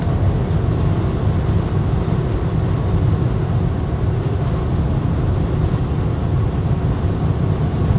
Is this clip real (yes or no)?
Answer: yes